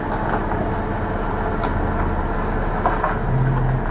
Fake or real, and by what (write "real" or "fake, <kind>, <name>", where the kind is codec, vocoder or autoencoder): real